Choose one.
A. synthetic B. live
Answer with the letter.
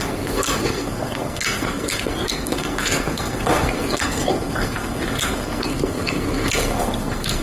A